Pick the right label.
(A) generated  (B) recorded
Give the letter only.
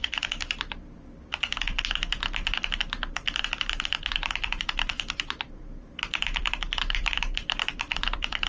A